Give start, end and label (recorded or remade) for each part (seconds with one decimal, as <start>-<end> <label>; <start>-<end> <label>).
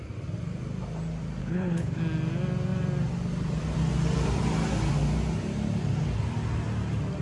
0.0-1.4 recorded; 1.4-2.0 remade; 2.0-7.2 recorded